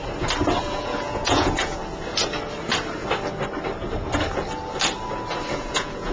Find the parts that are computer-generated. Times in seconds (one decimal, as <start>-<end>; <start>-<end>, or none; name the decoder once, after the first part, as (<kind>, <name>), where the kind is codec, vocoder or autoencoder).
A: 0.6-1.8 (vocoder, Vocos); 5.5-6.1